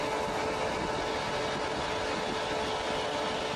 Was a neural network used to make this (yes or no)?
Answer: no